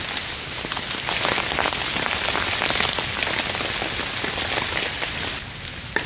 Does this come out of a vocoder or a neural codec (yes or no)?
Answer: no